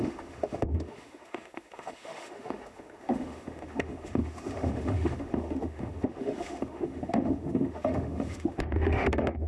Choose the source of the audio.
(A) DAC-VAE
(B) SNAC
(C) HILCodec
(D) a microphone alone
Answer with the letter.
A